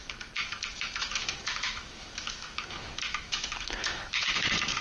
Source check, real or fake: fake